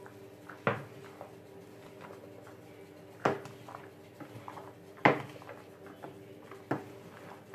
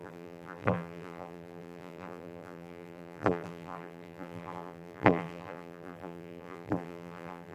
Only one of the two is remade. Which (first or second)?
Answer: second